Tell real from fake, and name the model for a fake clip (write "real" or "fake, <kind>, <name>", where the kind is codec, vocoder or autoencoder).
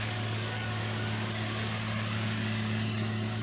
fake, codec, DAC